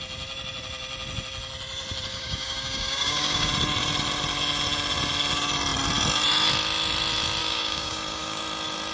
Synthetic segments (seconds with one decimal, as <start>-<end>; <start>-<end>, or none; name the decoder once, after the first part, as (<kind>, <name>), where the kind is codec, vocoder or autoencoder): 2.1-3.5 (codec, DAC); 7.4-8.4